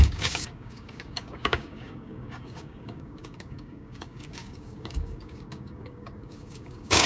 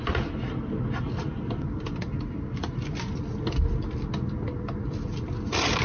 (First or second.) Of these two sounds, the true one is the second